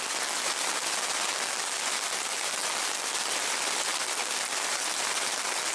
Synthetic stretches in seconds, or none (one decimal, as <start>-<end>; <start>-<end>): none